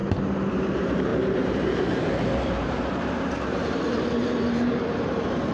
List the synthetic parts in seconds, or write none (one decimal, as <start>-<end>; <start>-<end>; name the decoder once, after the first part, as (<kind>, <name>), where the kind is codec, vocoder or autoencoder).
0.5-5.5 (vocoder, BigVGAN v2)